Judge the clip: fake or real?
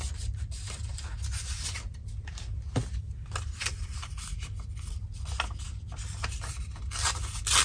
real